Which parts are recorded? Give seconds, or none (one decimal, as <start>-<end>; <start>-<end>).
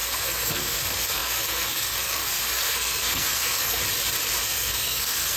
3.8-4.4